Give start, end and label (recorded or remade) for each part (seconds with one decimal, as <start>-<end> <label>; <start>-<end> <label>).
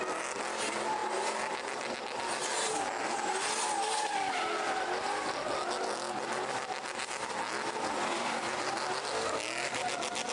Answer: 0.0-10.3 recorded